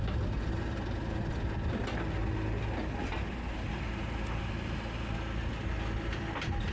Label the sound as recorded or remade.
recorded